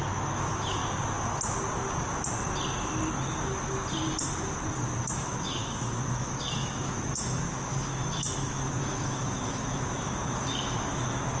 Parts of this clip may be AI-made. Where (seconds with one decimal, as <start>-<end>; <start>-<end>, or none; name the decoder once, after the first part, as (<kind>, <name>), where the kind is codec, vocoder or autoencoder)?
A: 0.0-0.8 (autoencoder, DAC-VAE); 5.0-11.4